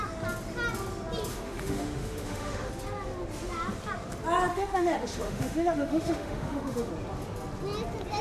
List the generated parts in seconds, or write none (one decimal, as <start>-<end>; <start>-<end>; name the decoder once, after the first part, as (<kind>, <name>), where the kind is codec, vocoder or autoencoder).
1.3-2.7 (autoencoder, DAC-VAE); 4.5-6.9

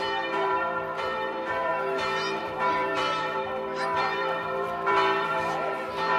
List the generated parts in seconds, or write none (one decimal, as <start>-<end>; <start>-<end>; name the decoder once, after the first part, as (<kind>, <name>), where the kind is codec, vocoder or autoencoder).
0.0-1.7 (vocoder, BigVGAN v2); 2.4-6.2

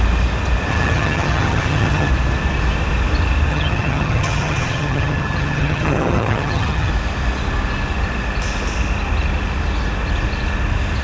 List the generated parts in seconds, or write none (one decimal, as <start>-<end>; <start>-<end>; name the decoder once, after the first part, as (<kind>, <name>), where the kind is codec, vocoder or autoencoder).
0.7-2.1 (vocoder, HiFi-GAN); 3.5-6.9

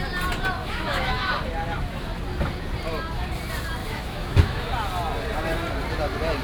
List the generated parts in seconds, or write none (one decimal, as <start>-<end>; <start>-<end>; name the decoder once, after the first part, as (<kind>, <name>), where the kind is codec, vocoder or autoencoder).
0.6-1.3 (autoencoder, DAC-VAE); 3.8-4.7

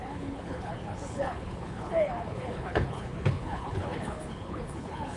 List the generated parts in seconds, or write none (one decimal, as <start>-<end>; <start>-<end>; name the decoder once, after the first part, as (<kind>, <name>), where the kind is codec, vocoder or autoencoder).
0.0-5.2 (codec, HILCodec)

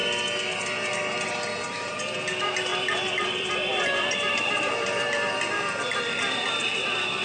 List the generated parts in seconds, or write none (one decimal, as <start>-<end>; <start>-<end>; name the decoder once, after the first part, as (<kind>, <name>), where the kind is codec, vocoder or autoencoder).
2.7-7.2 (vocoder, BigVGAN v2)

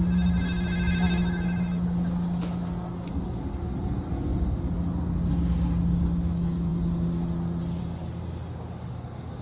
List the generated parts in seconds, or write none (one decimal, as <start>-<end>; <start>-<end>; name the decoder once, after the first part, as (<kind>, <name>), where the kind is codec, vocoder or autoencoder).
none